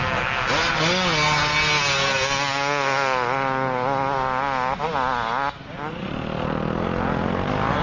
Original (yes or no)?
yes